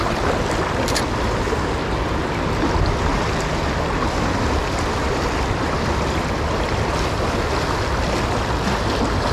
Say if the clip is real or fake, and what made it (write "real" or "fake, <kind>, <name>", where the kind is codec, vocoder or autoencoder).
real